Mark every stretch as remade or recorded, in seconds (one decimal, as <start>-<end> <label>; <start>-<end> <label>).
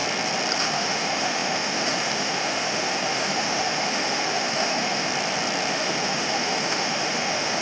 0.0-0.6 recorded; 0.6-5.1 remade; 5.1-5.7 recorded; 5.7-7.6 remade